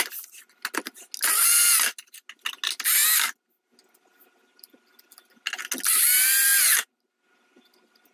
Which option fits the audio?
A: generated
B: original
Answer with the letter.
B